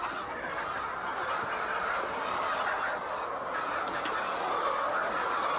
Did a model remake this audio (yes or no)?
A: no